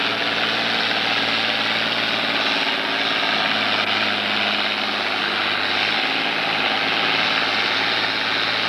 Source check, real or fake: real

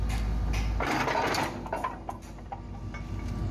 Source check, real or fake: real